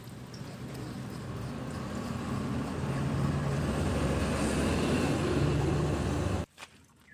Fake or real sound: real